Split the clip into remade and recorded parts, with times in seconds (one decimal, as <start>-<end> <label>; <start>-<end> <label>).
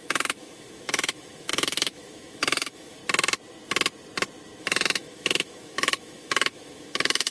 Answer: 0.0-3.0 remade; 3.0-4.6 recorded; 4.6-7.3 remade